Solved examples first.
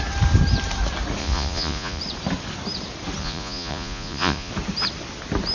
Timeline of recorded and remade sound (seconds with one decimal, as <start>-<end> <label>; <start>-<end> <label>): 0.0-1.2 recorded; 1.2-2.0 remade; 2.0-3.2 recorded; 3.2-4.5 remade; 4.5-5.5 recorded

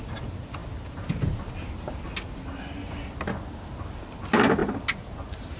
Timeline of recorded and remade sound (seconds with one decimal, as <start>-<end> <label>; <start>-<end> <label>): 0.0-5.6 recorded

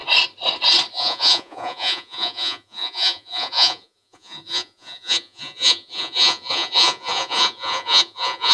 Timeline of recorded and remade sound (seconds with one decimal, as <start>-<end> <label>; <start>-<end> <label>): 0.0-0.9 recorded; 0.9-8.5 remade

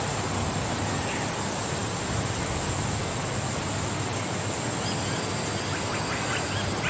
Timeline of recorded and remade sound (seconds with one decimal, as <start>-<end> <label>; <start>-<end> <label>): 0.0-6.9 recorded